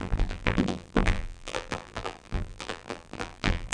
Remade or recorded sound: remade